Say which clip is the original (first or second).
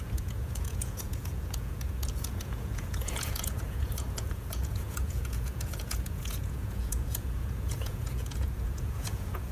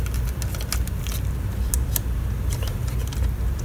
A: second